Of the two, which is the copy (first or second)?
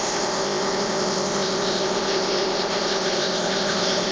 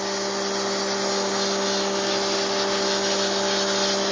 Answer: first